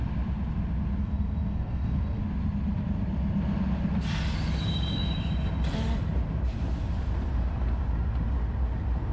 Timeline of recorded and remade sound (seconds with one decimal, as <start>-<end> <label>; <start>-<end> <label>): 0.0-1.0 recorded; 1.0-2.2 remade; 2.2-9.1 recorded